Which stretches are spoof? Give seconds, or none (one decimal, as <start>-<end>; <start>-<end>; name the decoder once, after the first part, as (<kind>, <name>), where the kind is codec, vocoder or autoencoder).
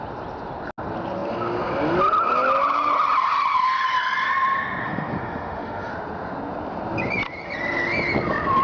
4.8-5.9 (autoencoder, DAC-VAE)